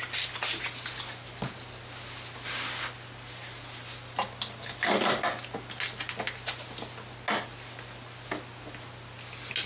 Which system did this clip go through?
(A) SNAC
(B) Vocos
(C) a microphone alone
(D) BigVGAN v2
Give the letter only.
C